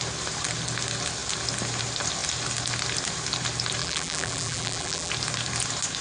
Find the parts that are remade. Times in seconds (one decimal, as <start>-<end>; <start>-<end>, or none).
3.8-5.1